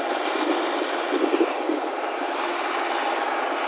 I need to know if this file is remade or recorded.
recorded